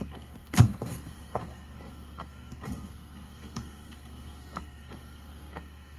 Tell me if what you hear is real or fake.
fake